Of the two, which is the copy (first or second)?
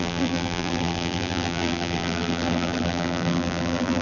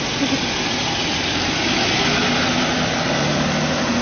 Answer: first